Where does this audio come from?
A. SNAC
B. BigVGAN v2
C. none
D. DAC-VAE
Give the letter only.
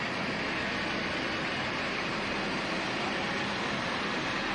C